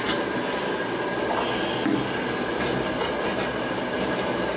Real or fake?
real